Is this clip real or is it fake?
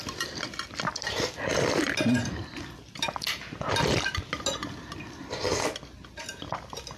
real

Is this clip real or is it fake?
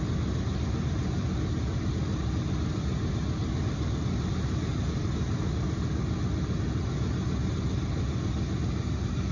real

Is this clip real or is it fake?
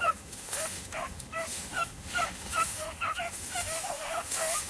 fake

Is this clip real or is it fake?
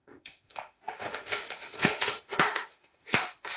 fake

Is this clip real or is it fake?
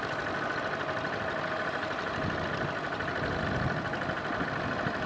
real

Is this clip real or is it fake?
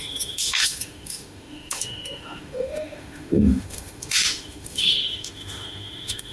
fake